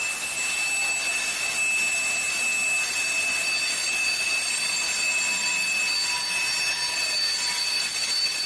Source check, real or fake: real